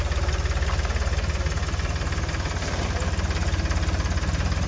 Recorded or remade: recorded